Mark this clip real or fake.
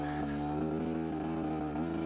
real